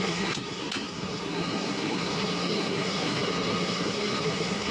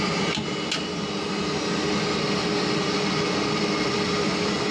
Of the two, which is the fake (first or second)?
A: first